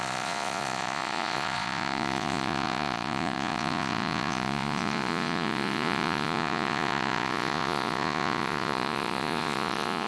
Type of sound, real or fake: fake